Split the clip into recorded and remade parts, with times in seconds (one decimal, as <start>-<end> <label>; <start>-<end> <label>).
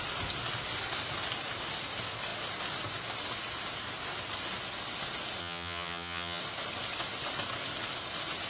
0.0-5.4 recorded; 5.4-6.4 remade; 6.4-8.5 recorded